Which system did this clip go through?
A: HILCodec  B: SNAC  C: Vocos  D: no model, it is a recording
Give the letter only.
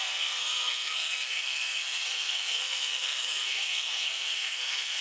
B